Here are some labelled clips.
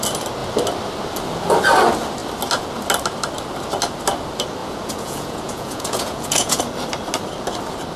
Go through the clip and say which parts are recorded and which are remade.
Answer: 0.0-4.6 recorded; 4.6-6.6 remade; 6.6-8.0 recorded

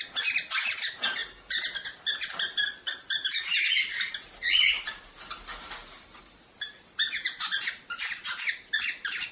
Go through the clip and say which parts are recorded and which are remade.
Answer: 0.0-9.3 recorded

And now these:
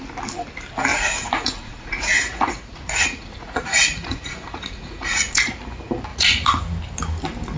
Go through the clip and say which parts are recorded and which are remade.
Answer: 0.0-0.9 recorded; 0.9-5.5 remade; 5.5-6.1 recorded; 6.1-6.6 remade; 6.6-7.6 recorded